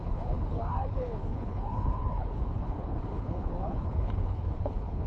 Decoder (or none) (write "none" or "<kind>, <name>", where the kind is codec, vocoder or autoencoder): codec, HILCodec